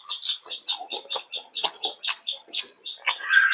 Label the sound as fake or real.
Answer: fake